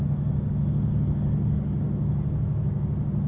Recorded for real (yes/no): yes